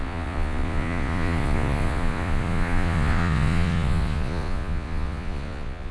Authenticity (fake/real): fake